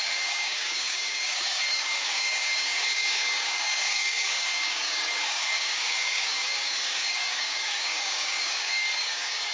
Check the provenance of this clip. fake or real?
fake